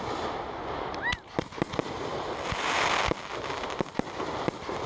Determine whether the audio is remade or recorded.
recorded